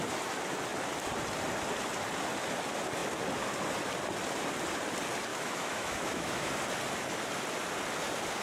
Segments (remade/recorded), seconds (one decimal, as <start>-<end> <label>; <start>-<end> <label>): 0.0-5.3 recorded; 5.3-6.5 remade; 6.5-8.4 recorded